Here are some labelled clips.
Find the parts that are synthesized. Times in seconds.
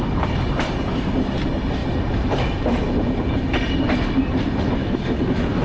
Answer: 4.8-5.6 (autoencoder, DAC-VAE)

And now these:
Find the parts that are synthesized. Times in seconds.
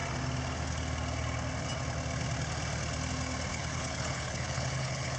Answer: 3.5-5.2 (codec, HILCodec)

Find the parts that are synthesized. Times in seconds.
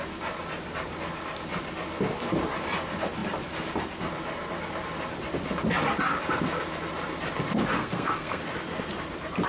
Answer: 7.8-8.4 (codec, SNAC)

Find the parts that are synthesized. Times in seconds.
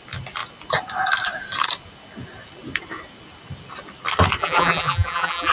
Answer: 4.4-5.5 (vocoder, BigVGAN v2)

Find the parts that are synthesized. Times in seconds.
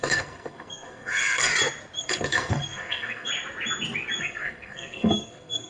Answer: 0.0-1.5 (codec, SNAC); 2.0-3.3; 4.2-5.7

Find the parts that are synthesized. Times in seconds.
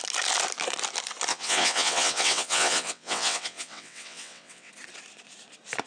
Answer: 1.3-4.7 (vocoder, WaveNeXt)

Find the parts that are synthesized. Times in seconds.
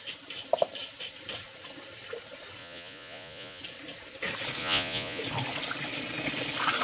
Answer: 2.6-3.6 (vocoder, Vocos); 4.6-5.2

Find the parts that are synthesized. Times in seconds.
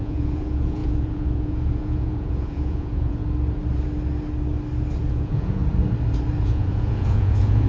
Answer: 0.0-3.2 (vocoder, Vocos); 5.1-5.6; 6.4-7.7